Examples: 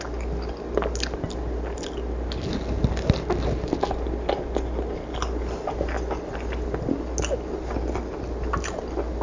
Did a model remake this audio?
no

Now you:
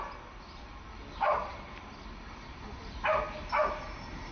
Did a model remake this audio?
no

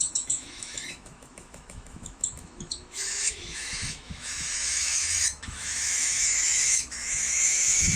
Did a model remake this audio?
yes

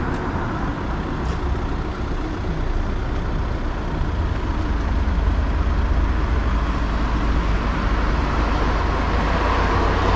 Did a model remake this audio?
no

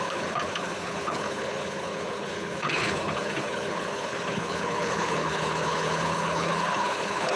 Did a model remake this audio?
yes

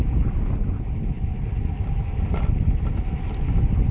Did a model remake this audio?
no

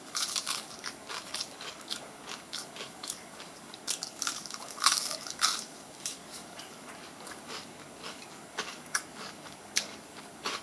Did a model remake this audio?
yes